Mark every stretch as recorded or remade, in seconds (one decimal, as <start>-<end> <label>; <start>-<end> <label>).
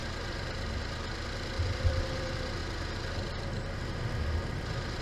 0.0-5.0 recorded